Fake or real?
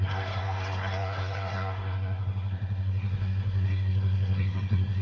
fake